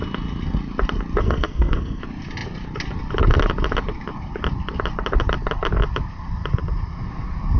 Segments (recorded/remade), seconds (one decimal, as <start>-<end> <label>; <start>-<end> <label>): 0.0-1.2 recorded; 1.2-2.0 remade; 2.0-7.6 recorded